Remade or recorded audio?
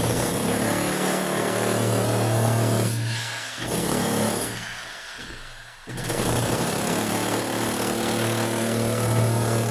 remade